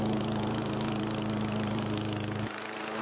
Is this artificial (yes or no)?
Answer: yes